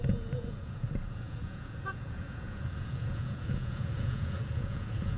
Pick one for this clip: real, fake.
fake